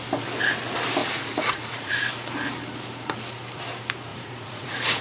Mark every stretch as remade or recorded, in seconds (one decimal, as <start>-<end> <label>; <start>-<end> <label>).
0.0-1.0 recorded; 1.0-1.9 remade; 1.9-4.1 recorded; 4.1-5.0 remade